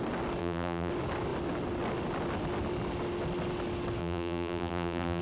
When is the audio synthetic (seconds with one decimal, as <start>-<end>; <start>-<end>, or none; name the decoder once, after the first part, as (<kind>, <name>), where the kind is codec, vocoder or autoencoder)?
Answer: 0.4-0.9 (vocoder, BigVGAN v2); 4.0-5.2